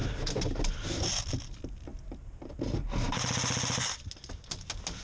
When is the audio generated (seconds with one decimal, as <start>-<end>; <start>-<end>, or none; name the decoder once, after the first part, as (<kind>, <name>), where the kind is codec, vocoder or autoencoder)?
none